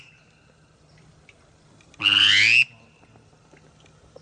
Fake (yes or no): no